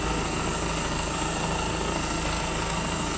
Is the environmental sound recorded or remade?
remade